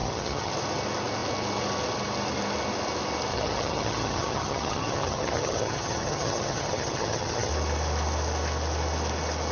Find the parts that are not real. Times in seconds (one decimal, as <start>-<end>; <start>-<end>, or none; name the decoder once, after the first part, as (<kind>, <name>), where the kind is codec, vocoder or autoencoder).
0.0-0.5 (vocoder, HiFi-GAN); 3.3-7.5